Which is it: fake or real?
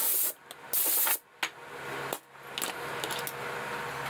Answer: real